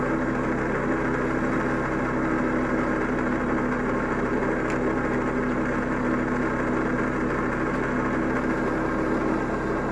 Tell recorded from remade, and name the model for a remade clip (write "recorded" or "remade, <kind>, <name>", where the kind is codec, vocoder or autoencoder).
recorded